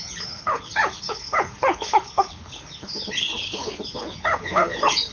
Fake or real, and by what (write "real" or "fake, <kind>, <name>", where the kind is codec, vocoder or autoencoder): fake, codec, HILCodec